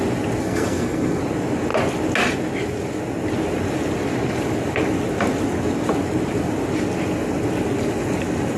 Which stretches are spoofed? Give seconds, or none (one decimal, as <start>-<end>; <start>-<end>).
0.4-1.2